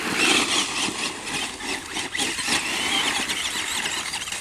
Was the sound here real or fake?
real